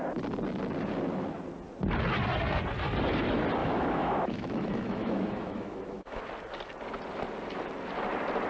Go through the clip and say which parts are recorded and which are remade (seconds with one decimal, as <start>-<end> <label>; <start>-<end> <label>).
0.0-3.6 recorded; 3.6-6.2 remade; 6.2-8.5 recorded